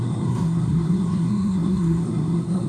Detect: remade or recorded remade